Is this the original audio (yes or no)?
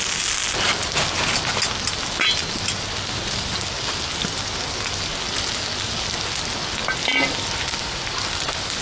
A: yes